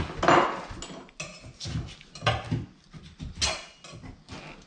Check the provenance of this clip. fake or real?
real